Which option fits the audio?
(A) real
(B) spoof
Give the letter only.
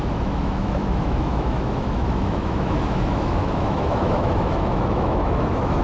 B